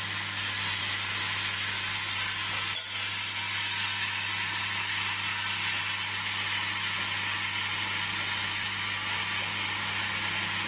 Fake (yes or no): no